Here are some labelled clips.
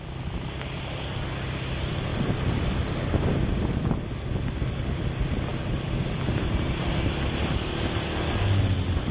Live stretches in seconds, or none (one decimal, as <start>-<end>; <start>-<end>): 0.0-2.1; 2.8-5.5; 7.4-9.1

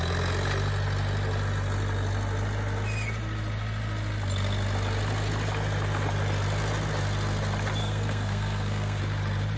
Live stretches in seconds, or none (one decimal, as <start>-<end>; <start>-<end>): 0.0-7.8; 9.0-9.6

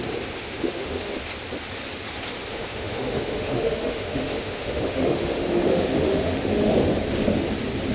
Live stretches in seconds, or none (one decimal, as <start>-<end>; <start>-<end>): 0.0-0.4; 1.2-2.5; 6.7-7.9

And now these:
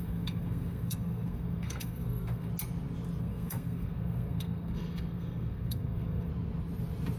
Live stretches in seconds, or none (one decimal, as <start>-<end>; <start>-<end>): 2.5-3.2; 6.3-7.2